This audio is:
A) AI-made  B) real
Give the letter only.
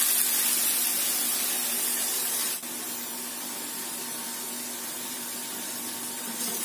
B